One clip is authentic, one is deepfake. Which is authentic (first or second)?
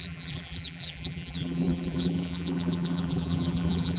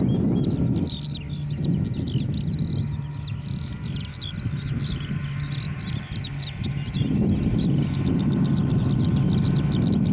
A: second